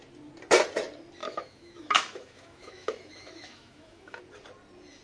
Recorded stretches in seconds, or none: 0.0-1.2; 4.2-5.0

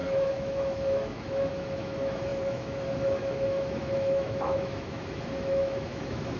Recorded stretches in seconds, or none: none

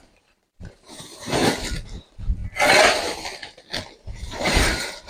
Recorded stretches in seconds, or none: 1.4-2.0; 2.4-3.9

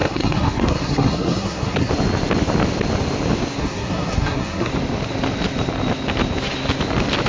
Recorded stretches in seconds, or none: 1.9-3.6; 4.7-7.3

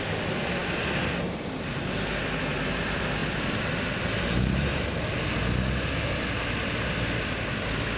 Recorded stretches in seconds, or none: 0.0-8.0

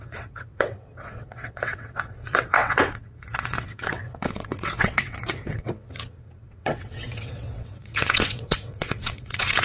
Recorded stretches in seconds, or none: none

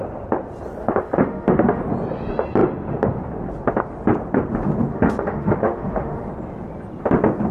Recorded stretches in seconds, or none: 0.0-0.8; 1.8-4.9; 6.3-7.5